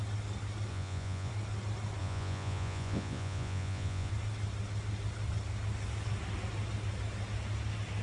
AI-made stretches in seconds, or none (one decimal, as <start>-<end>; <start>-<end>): 0.7-1.3; 2.0-4.1